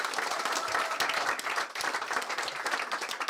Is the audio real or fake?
real